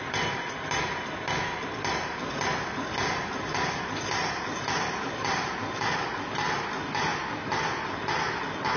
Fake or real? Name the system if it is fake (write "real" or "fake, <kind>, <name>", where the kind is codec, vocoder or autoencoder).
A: real